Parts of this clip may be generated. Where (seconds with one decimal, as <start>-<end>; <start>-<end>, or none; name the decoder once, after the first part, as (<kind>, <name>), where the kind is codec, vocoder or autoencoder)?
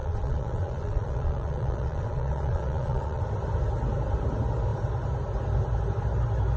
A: 0.0-3.2 (vocoder, Vocos)